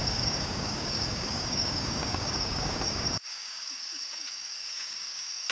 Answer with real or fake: fake